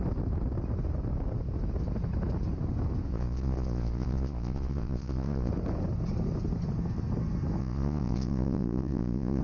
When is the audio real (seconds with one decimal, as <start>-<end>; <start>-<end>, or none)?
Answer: 0.0-3.1; 5.5-7.6